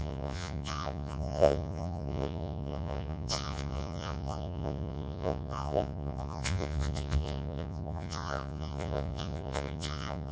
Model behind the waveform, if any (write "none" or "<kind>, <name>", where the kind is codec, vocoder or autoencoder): vocoder, Vocos